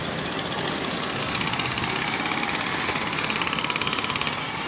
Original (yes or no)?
yes